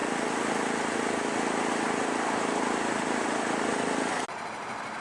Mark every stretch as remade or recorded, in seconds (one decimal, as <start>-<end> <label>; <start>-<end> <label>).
0.0-5.0 recorded